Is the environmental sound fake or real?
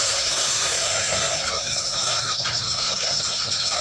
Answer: fake